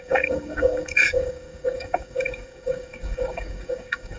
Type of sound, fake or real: fake